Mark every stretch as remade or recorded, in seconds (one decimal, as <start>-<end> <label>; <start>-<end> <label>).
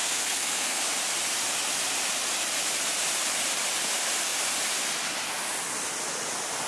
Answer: 0.0-0.8 remade; 0.8-6.7 recorded